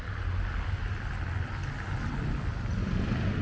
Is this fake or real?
real